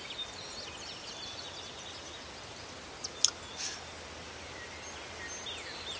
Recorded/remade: recorded